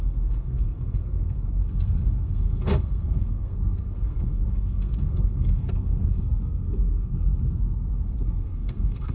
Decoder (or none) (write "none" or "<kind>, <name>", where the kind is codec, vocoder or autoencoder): codec, SNAC